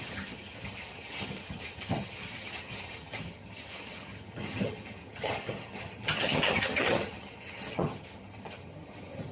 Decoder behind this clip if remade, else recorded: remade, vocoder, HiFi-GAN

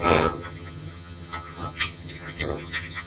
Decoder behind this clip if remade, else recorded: remade, vocoder, HiFi-GAN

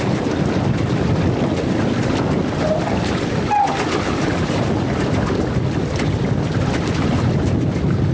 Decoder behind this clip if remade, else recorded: recorded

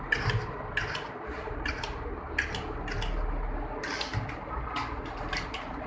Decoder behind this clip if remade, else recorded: recorded